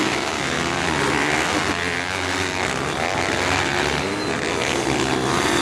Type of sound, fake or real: real